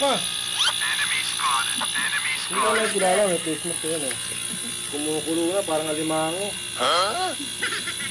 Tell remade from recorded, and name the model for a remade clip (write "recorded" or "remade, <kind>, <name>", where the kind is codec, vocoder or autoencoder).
recorded